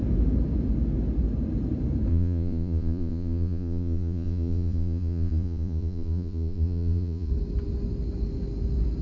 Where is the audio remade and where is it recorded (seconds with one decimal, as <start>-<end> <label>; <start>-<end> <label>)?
0.0-2.1 recorded; 2.1-7.3 remade; 7.3-9.0 recorded